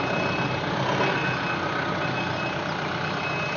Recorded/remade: recorded